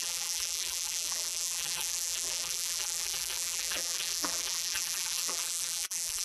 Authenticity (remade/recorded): remade